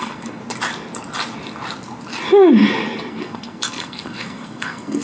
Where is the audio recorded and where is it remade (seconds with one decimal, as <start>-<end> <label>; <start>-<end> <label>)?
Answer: 0.0-0.4 remade; 0.4-3.1 recorded; 3.1-5.0 remade

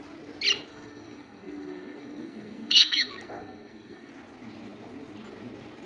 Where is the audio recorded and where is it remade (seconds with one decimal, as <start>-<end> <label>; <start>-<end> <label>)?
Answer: 0.0-0.7 recorded; 0.7-4.1 remade; 4.1-5.9 recorded

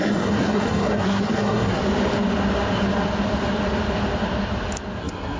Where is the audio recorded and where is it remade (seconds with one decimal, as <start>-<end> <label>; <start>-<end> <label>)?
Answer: 0.0-1.8 remade; 1.8-5.0 recorded; 5.0-5.4 remade

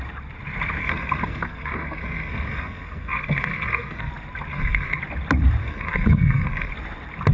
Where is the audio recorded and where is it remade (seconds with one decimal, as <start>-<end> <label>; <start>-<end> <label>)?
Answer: 0.0-0.8 recorded; 0.8-4.1 remade; 4.1-4.5 recorded; 4.5-5.0 remade; 5.0-5.6 recorded; 5.6-6.7 remade; 6.7-7.3 recorded

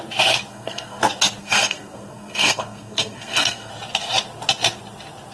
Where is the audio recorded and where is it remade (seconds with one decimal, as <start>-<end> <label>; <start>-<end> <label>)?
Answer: 0.0-0.5 recorded; 0.5-1.0 remade; 1.0-1.4 recorded; 1.4-3.7 remade; 3.7-5.3 recorded

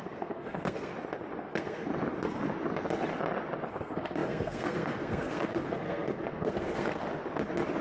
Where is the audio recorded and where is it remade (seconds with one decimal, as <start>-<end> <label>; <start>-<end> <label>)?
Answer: 0.0-0.9 remade; 0.9-1.5 recorded; 1.5-1.9 remade; 1.9-3.7 recorded; 3.7-7.0 remade; 7.0-7.8 recorded

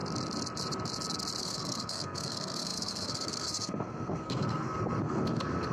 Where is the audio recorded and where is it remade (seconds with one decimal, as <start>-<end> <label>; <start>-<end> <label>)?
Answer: 0.0-1.4 recorded; 1.4-5.7 remade